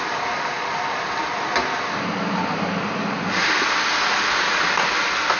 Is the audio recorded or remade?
recorded